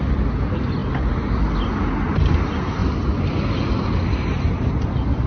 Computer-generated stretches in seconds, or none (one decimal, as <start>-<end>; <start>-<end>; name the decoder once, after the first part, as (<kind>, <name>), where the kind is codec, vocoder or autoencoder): none